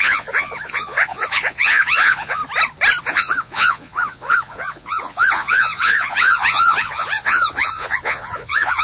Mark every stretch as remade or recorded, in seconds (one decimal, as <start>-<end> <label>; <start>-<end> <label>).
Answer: 0.0-2.4 remade; 2.4-3.0 recorded; 3.0-8.8 remade